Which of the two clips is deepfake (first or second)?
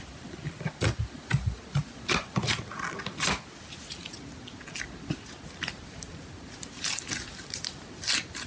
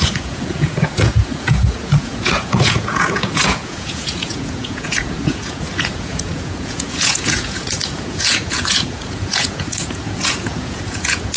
second